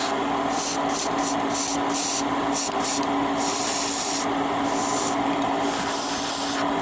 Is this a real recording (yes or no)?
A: yes